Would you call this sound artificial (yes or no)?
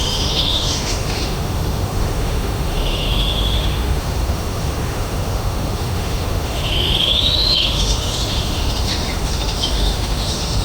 yes